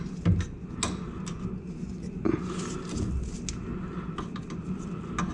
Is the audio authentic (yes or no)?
yes